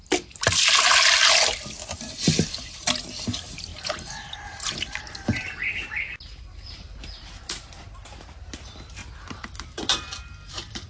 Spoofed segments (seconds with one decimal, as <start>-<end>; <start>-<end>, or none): 5.8-7.8; 9.0-10.9